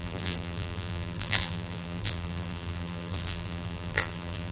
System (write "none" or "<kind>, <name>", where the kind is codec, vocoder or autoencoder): vocoder, BigVGAN v2